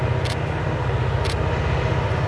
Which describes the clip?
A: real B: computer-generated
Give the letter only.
A